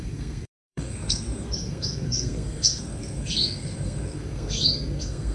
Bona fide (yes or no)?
no